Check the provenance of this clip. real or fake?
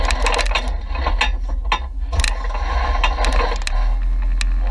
real